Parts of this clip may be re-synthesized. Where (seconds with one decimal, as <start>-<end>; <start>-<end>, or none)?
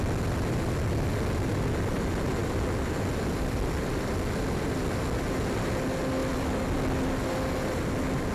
none